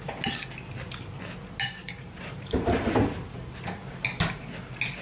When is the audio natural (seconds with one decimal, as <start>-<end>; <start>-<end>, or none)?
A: 0.0-1.8; 2.8-5.0